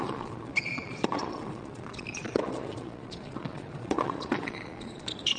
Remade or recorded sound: remade